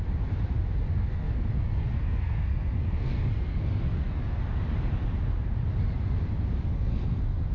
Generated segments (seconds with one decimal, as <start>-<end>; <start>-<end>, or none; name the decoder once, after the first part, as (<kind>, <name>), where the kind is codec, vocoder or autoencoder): 0.9-4.4 (codec, SNAC); 6.7-7.5